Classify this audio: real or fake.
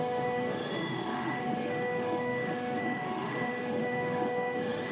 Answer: fake